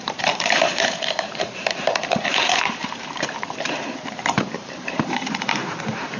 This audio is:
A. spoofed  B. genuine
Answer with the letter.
A